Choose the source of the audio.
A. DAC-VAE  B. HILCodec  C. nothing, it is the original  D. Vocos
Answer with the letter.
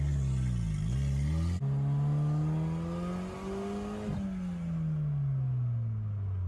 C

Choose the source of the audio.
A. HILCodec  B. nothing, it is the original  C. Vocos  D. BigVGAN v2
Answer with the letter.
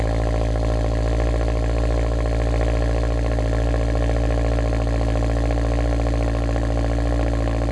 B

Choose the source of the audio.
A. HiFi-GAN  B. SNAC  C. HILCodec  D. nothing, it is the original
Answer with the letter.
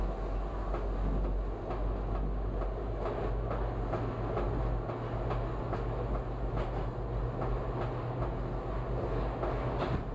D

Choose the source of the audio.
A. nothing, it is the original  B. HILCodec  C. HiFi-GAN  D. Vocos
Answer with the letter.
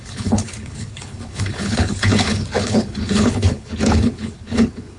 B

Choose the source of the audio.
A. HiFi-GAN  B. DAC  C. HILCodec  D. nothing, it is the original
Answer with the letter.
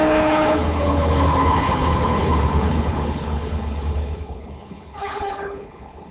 C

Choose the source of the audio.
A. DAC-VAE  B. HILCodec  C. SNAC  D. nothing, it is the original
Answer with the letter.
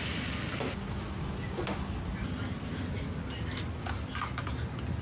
D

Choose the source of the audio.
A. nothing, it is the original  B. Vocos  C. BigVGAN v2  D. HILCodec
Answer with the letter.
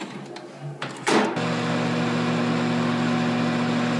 A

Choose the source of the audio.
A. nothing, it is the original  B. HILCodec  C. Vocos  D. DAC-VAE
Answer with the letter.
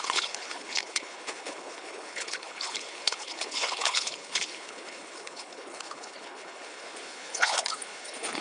B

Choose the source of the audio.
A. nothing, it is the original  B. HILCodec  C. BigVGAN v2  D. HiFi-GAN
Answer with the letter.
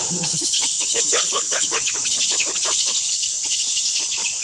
B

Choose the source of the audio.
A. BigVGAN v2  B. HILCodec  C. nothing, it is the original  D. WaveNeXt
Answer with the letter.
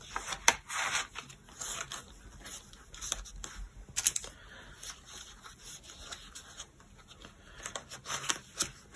C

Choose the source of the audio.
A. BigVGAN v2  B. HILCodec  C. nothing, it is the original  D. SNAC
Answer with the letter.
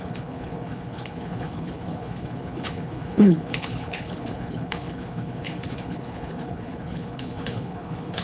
B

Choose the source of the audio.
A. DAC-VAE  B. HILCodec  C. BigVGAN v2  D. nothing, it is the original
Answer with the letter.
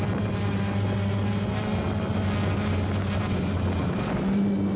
D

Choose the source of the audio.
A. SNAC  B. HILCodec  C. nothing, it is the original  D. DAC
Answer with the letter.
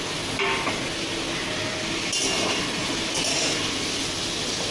C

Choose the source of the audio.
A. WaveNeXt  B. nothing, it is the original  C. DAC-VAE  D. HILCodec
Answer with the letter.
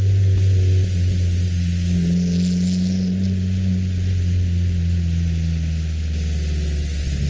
B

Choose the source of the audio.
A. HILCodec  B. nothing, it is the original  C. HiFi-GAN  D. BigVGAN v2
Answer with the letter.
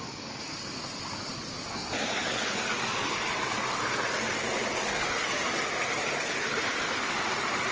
B